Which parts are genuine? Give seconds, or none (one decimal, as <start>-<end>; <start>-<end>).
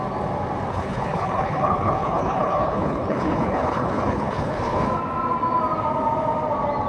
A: 0.0-0.7; 4.8-6.9